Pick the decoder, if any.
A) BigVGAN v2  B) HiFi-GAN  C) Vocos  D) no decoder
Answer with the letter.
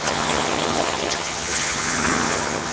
B